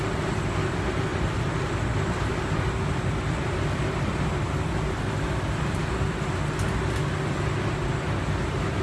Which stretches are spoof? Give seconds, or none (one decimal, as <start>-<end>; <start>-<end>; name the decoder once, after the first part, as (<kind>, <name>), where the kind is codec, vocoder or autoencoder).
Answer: 1.1-2.3 (vocoder, BigVGAN v2)